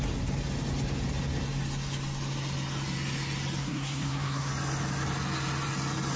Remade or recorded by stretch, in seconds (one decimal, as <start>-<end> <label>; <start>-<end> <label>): 0.0-3.6 recorded; 3.6-4.5 remade; 4.5-6.2 recorded